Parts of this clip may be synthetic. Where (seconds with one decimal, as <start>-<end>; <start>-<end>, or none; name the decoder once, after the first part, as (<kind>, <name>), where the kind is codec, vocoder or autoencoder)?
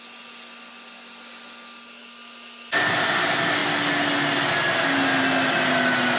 none